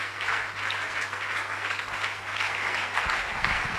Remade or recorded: remade